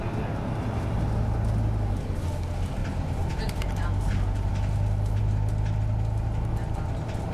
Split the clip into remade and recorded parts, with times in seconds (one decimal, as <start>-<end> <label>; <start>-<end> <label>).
0.0-7.3 recorded